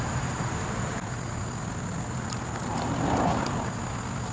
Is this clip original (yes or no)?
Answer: yes